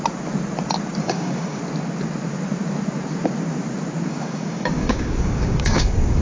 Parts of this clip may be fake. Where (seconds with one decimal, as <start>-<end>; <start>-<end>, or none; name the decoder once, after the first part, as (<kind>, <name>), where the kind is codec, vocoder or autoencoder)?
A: 1.0-1.6 (codec, DAC); 4.1-6.2